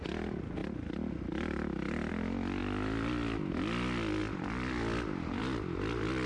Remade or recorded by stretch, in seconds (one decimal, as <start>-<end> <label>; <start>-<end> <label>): 0.0-4.2 recorded; 4.2-6.3 remade